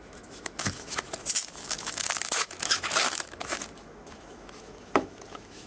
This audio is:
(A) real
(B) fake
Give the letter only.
B